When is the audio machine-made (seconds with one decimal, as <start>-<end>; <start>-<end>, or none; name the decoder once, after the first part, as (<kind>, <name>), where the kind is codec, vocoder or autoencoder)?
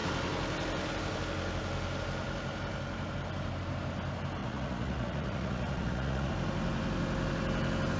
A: 4.4-6.3 (vocoder, Vocos)